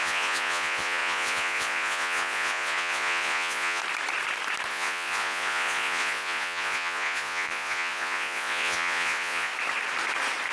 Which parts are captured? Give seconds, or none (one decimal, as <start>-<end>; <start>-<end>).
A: 3.8-4.7; 9.5-10.5